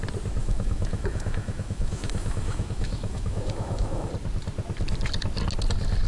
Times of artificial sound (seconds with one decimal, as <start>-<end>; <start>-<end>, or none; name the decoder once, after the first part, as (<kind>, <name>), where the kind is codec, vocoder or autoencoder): 0.4-4.1 (autoencoder, DAC-VAE)